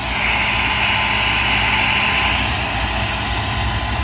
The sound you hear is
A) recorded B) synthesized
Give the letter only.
A